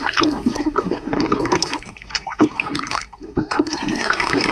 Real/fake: fake